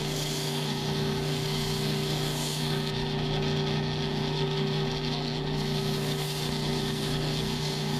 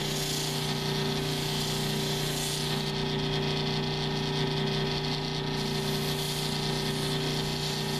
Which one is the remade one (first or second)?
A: first